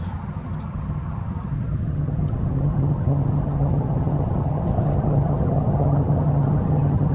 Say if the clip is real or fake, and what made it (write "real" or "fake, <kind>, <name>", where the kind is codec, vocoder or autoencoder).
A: fake, vocoder, HiFi-GAN